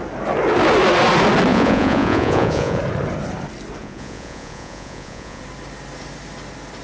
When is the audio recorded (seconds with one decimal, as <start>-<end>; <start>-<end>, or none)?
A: 0.0-1.5; 2.8-3.8; 5.4-6.8